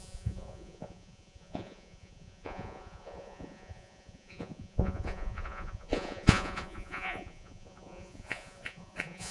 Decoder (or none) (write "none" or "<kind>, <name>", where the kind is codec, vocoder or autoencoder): vocoder, Vocos